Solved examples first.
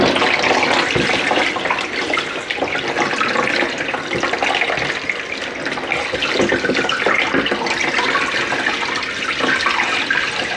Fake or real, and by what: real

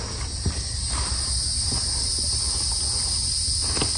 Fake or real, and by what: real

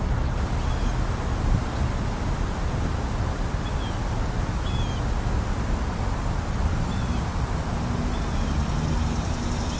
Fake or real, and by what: real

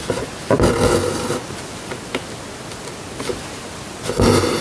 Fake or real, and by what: real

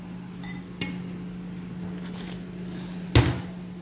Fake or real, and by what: real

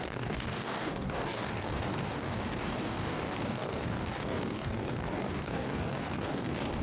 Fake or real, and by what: fake, codec, DAC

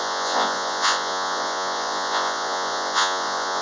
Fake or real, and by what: fake, vocoder, Vocos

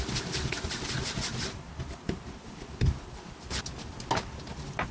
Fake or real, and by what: real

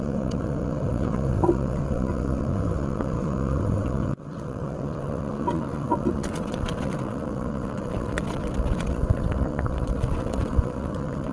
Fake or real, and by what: fake, vocoder, WaveNeXt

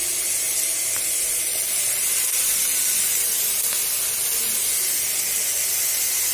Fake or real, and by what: real